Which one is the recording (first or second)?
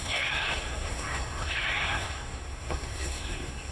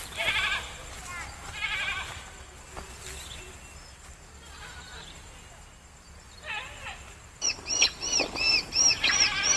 second